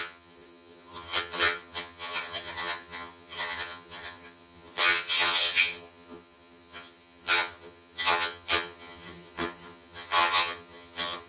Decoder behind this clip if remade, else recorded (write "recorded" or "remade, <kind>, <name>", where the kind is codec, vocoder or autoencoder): remade, vocoder, HiFi-GAN